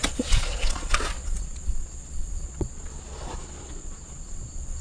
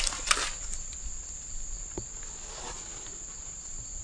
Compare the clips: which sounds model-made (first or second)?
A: first